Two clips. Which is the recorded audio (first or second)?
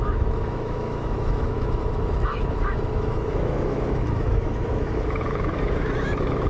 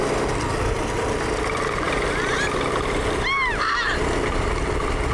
second